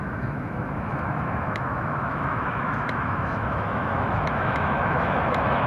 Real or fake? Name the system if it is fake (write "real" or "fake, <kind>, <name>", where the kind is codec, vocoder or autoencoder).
fake, autoencoder, DAC-VAE